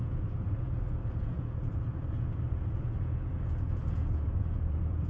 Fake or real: fake